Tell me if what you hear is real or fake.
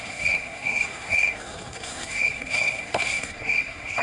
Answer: fake